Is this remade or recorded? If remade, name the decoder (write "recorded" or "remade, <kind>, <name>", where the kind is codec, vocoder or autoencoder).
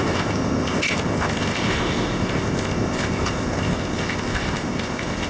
remade, codec, ZipCodec